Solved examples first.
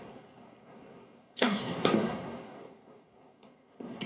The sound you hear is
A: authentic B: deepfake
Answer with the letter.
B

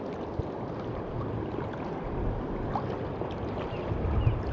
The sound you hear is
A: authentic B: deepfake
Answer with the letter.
A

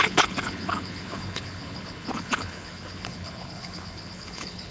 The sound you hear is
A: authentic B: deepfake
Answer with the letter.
B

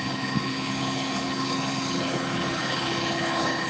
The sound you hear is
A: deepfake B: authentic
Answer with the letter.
A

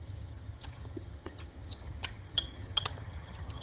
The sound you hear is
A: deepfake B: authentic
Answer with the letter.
A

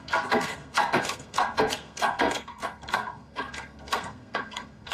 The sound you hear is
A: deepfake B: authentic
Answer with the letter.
A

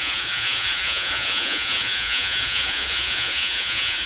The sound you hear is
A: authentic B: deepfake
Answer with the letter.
B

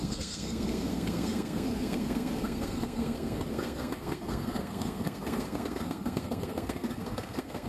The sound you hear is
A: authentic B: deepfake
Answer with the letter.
B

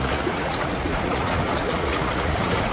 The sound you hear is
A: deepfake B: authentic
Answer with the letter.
A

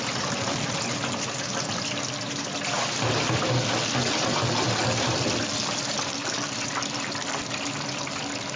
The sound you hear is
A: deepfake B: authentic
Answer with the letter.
B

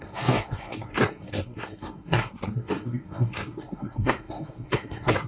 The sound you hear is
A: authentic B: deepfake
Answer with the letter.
B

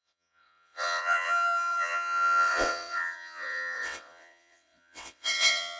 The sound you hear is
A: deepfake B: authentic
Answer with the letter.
A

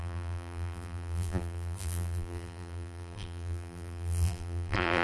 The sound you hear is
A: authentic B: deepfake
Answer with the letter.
B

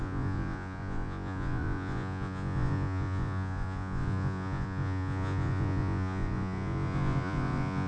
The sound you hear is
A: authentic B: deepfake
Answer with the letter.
B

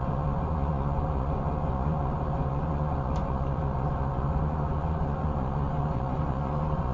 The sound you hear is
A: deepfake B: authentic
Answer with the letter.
A